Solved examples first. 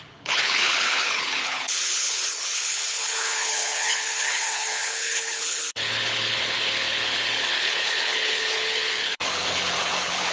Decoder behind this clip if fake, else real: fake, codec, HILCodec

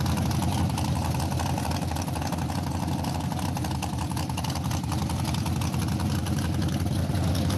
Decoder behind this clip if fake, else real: real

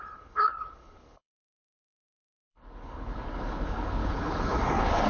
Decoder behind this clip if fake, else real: fake, codec, HILCodec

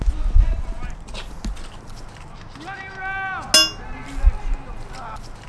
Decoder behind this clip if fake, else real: real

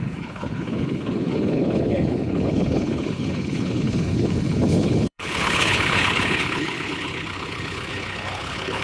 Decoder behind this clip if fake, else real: fake, codec, HILCodec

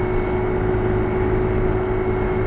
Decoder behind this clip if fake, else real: real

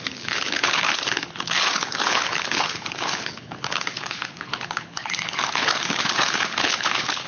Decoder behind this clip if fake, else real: fake, codec, HILCodec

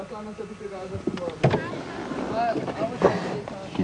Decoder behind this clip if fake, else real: real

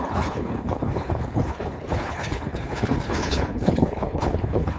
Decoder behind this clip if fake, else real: fake, codec, HILCodec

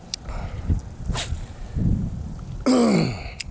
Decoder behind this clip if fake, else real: real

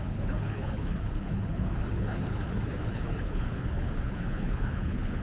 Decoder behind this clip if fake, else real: fake, codec, HILCodec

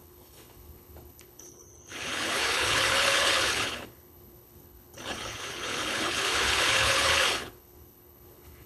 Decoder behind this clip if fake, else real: fake, codec, HILCodec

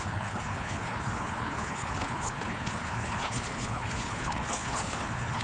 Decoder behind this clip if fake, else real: fake, codec, HILCodec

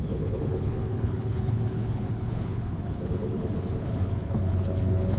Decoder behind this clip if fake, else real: fake, codec, HILCodec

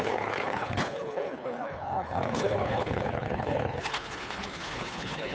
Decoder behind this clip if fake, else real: fake, codec, HILCodec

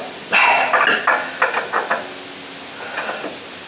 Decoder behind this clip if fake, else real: real